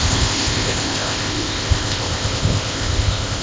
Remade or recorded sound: remade